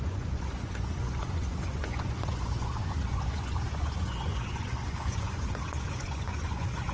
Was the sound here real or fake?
fake